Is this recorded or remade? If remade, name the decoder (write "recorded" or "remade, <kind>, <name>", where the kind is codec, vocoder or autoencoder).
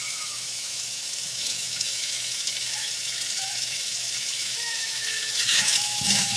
remade, autoencoder, DAC-VAE